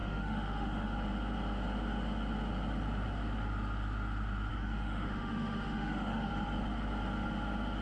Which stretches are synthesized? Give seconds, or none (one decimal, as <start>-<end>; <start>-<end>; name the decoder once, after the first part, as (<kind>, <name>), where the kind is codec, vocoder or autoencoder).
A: 0.0-0.9 (autoencoder, DAC-VAE); 4.5-6.3